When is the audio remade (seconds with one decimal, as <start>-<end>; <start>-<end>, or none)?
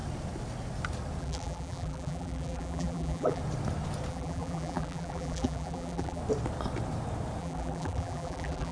1.2-3.4; 4.1-6.2; 7.4-8.7